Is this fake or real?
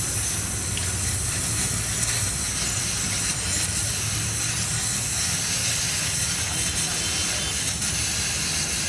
real